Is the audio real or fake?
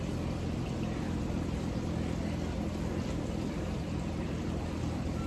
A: real